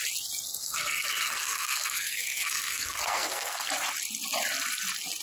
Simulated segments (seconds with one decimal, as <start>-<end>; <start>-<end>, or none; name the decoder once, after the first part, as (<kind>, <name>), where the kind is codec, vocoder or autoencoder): 0.6-3.7 (codec, SNAC)